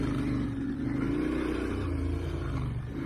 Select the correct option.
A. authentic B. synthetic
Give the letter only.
A